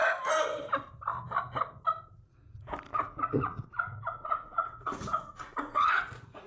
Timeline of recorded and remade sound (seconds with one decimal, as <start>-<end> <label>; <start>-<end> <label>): 0.0-2.9 recorded; 2.9-6.5 remade